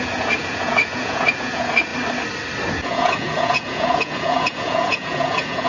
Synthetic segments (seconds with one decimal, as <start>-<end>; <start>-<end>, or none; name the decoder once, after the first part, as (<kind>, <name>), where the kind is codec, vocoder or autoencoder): 0.0-1.9 (vocoder, Vocos); 2.7-5.7